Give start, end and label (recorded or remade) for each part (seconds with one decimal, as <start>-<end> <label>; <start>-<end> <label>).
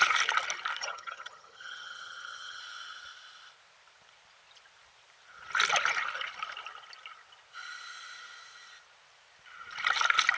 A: 0.0-0.8 recorded; 0.8-2.6 remade; 2.6-10.4 recorded